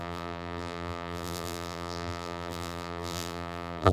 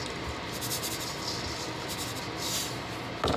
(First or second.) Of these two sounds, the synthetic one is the first